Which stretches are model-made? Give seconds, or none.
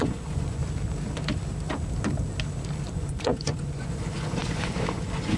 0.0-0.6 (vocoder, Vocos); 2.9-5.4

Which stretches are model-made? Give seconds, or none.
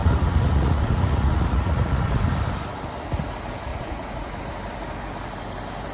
0.0-2.2 (vocoder, Vocos); 3.7-4.4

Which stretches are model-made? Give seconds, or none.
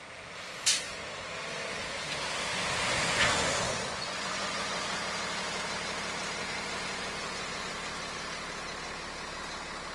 2.5-5.0 (vocoder, Vocos); 6.4-7.7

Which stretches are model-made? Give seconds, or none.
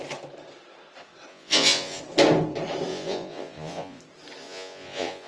1.3-2.0 (vocoder, Vocos); 2.9-4.0; 4.4-5.3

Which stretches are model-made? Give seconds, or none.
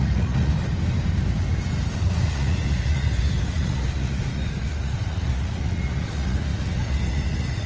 0.0-0.5 (vocoder, Vocos); 2.0-7.7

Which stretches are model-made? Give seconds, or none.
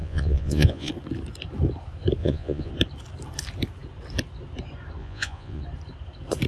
0.0-0.9 (vocoder, Vocos); 2.2-2.7; 5.0-5.6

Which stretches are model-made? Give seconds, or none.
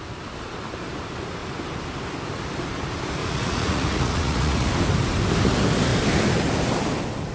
3.2-4.7 (vocoder, Vocos)